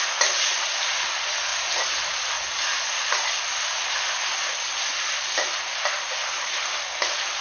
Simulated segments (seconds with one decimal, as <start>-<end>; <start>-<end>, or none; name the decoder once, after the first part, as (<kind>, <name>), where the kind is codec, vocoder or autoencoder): none